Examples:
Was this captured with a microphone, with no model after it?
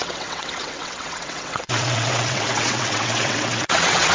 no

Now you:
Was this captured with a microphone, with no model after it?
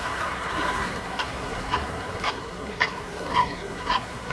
no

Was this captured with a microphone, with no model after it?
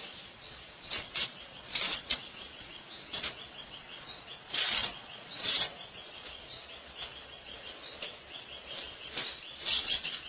no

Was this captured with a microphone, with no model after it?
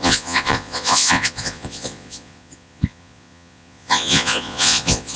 no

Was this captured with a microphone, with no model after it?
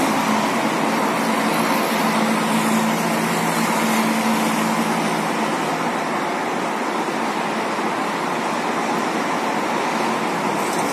yes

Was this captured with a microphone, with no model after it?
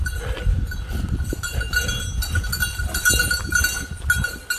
yes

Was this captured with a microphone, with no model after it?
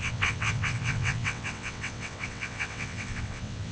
no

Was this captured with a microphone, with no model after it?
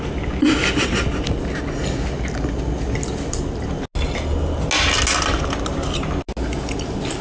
yes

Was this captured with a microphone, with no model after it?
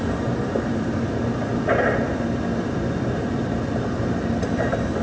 no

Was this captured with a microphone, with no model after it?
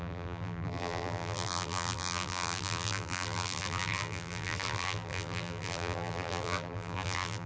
no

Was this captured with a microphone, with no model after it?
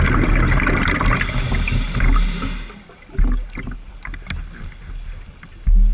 yes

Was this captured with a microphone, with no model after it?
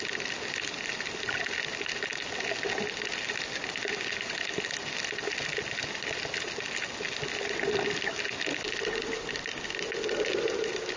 yes